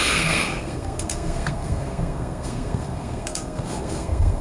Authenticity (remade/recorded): remade